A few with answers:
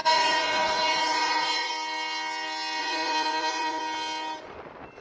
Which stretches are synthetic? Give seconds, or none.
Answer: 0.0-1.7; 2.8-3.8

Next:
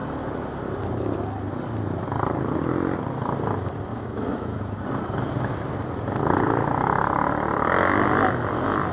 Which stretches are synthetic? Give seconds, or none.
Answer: 3.9-4.6

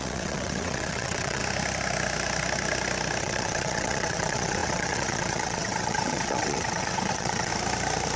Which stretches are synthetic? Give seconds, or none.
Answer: 0.0-1.4; 3.2-7.5